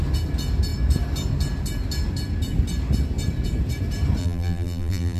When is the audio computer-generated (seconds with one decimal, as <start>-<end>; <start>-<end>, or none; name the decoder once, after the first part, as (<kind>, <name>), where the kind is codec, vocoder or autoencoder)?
4.2-5.2 (vocoder, BigVGAN v2)